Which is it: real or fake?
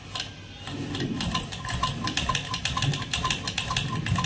real